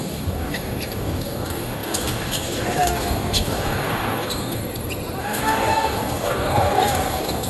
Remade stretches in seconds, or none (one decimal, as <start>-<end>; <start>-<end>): 0.0-4.6; 5.2-7.5